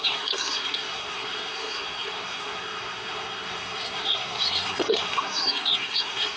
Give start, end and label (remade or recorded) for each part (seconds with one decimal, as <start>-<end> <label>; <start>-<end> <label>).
0.0-6.4 remade